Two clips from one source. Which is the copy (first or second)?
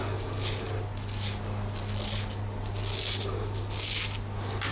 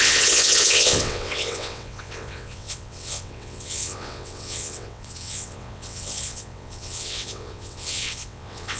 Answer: second